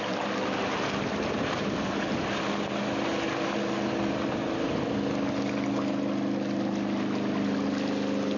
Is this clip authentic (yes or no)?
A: yes